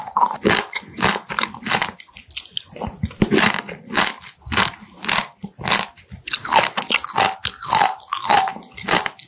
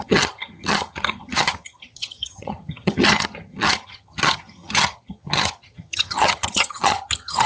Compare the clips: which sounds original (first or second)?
first